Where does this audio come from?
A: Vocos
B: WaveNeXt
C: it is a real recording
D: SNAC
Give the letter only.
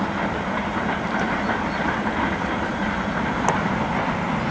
C